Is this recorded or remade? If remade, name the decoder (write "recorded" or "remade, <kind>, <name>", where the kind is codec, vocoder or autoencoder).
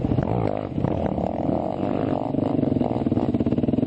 recorded